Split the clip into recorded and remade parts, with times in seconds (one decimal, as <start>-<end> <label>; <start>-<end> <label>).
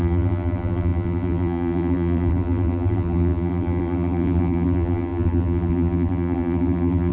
0.0-7.1 remade